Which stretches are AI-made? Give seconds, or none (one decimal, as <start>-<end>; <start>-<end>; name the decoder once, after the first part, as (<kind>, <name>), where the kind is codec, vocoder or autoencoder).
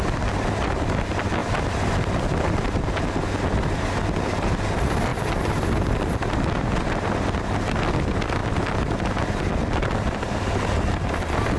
none